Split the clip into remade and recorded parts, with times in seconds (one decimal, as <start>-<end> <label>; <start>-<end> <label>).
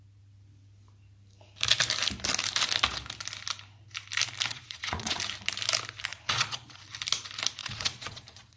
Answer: 0.0-4.5 recorded; 4.5-5.2 remade; 5.2-6.1 recorded; 6.1-6.8 remade; 6.8-7.6 recorded; 7.6-8.6 remade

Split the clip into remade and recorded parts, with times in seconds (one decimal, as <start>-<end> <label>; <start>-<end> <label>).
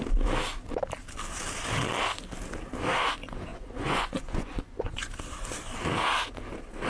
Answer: 0.0-3.5 recorded; 3.5-5.0 remade; 5.0-6.9 recorded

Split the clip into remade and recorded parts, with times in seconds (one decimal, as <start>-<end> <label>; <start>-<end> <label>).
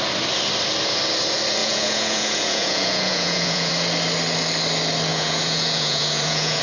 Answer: 0.0-1.6 recorded; 1.6-3.7 remade; 3.7-5.1 recorded; 5.1-6.6 remade